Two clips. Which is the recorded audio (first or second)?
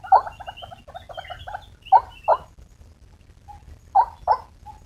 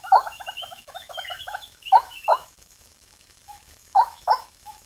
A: first